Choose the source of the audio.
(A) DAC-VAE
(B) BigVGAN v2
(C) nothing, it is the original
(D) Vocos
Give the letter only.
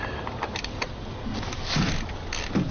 C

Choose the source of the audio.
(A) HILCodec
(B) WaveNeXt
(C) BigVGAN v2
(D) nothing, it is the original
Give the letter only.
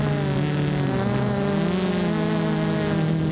D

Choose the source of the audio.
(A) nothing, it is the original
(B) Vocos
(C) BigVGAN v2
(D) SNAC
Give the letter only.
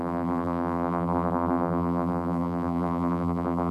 C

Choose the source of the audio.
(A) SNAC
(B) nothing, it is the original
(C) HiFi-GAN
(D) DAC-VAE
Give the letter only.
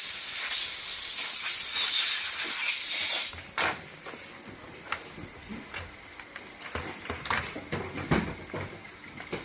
B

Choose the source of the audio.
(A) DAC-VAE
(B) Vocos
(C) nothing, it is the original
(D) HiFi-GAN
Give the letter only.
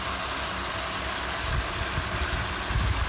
C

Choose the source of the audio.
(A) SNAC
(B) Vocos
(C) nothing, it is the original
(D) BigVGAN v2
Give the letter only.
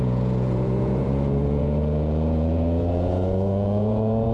B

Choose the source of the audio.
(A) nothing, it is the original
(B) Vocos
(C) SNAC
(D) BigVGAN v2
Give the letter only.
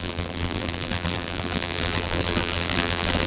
D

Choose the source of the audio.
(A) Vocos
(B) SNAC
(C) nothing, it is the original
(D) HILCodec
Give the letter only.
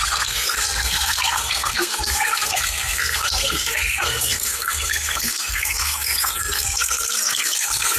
B